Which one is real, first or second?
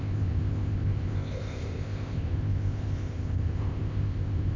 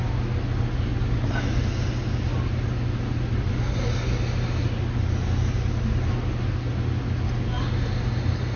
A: second